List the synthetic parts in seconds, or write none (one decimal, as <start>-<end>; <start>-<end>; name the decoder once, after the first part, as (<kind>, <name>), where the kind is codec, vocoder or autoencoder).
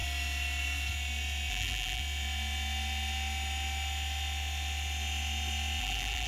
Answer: 1.5-2.0 (vocoder, BigVGAN v2); 5.8-6.3